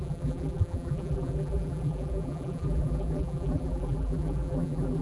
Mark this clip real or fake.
fake